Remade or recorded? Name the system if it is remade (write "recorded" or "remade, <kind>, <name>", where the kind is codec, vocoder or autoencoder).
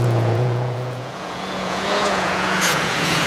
remade, vocoder, Vocos